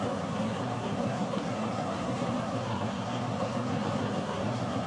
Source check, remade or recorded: remade